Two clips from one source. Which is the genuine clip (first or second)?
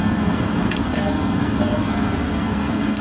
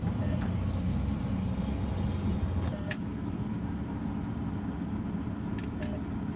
second